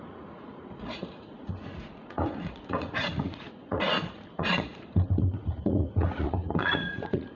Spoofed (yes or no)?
yes